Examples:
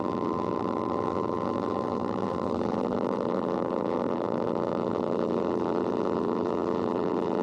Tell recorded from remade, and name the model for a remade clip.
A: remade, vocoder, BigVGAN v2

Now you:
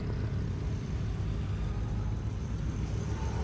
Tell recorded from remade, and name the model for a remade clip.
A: recorded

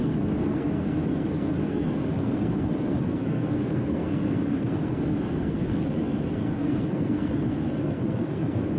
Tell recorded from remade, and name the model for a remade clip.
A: remade, codec, SNAC